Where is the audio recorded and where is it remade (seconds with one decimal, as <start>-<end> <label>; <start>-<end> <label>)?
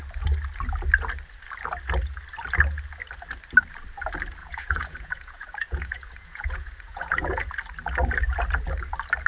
0.0-4.4 recorded; 4.4-7.5 remade; 7.5-9.3 recorded